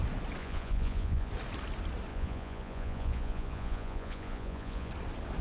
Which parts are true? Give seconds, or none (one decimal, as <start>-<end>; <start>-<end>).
0.0-0.4; 1.3-2.1; 4.9-5.4